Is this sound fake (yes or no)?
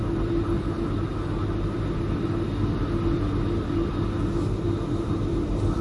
no